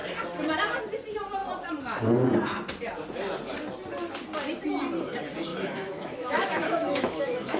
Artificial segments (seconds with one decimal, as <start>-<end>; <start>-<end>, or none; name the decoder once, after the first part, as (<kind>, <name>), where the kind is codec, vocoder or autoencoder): 5.5-7.6 (autoencoder, DAC-VAE)